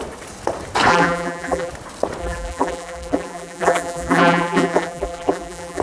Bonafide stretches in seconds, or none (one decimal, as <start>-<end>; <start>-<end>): 0.0-0.9; 1.7-2.2